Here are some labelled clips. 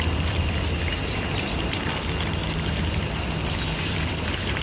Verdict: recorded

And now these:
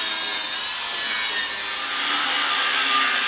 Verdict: recorded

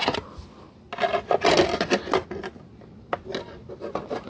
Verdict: recorded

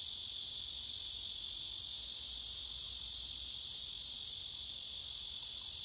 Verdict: recorded